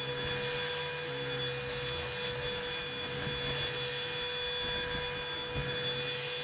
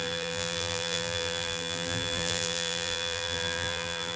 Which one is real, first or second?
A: first